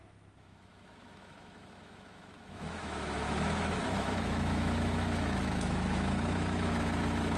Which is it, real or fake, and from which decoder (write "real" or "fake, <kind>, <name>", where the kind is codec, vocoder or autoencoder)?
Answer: fake, autoencoder, DAC-VAE